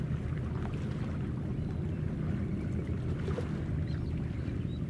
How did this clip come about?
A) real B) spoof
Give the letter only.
A